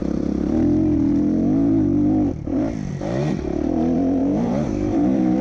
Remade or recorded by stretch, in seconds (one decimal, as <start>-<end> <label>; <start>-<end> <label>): 0.0-4.2 recorded; 4.2-5.4 remade